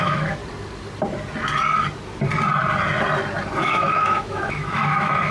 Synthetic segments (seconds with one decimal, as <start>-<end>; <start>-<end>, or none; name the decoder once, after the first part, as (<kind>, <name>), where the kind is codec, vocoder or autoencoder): 0.0-0.4 (autoencoder, DAC-VAE); 3.6-5.3